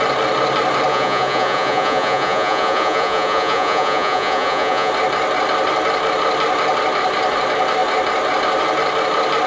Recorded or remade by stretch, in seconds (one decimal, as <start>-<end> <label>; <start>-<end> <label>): 0.0-0.9 recorded; 0.9-4.9 remade; 4.9-9.5 recorded